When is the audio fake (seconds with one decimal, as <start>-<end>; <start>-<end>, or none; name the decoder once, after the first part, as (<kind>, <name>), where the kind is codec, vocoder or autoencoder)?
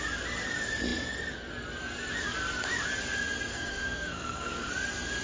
3.5-4.7 (codec, SNAC)